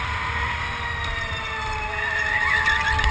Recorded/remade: recorded